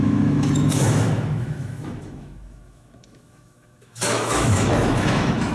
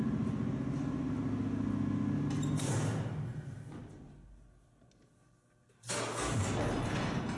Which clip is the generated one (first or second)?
first